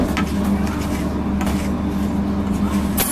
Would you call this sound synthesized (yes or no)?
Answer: no